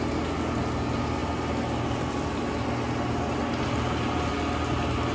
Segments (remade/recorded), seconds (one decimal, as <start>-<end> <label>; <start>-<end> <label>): 0.0-5.1 recorded